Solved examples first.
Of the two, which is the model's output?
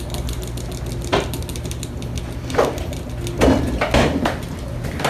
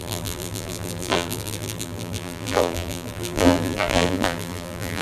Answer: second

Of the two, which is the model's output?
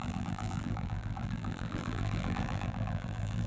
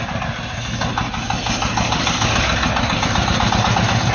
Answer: first